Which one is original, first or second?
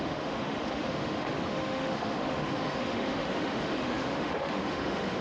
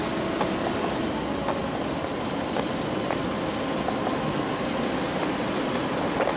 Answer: second